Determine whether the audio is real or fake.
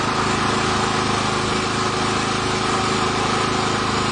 real